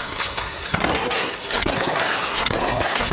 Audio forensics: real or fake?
fake